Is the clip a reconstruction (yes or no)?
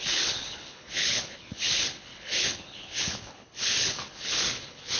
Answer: yes